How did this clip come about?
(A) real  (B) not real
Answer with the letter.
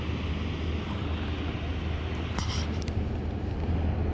A